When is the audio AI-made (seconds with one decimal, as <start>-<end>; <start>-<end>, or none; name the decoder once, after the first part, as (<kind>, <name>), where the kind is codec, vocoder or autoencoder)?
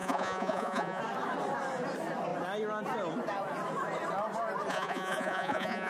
0.0-1.0 (vocoder, Vocos); 4.7-5.9